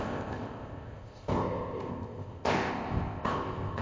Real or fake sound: fake